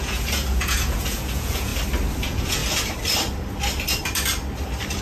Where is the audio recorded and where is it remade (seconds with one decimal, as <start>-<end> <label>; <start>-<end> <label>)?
0.0-1.7 remade; 1.7-2.2 recorded; 2.2-2.6 remade; 2.6-5.0 recorded